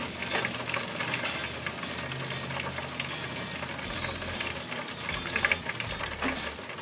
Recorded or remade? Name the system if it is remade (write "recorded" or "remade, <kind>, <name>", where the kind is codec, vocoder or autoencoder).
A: recorded